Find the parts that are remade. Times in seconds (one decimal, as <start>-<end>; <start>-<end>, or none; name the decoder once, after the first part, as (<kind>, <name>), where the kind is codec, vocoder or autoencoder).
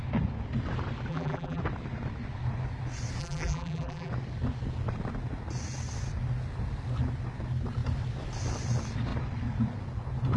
1.1-1.6 (vocoder, BigVGAN v2); 3.2-4.1